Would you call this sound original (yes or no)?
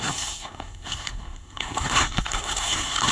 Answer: no